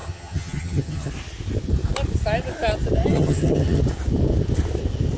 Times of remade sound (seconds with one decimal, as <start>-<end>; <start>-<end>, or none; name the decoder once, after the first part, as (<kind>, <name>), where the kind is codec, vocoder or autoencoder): 0.0-1.1 (vocoder, HiFi-GAN); 3.1-3.8